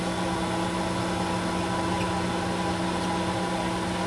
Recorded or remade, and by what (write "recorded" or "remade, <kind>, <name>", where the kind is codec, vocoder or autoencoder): recorded